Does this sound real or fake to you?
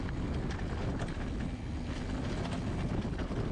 real